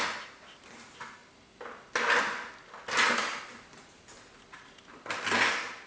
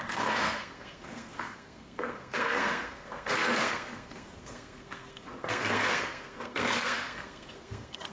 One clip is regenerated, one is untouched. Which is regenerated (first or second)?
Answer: second